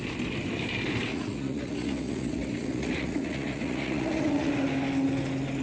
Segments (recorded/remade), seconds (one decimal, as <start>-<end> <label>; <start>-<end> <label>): 0.0-1.1 recorded; 1.1-4.5 remade; 4.5-5.6 recorded